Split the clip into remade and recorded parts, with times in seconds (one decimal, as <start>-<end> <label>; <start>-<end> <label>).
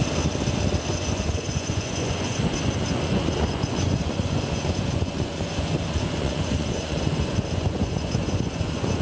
0.0-0.9 recorded; 0.9-9.0 remade